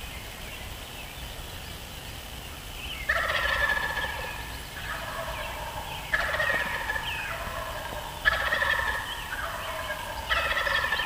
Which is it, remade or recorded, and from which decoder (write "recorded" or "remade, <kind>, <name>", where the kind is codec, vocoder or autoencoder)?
recorded